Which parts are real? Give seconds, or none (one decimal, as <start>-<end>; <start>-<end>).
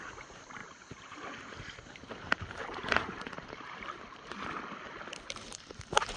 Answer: 0.0-0.6; 4.3-6.2